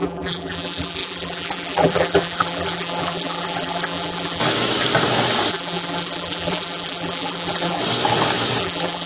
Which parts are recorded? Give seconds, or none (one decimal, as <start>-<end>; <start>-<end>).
4.4-5.5; 7.8-8.6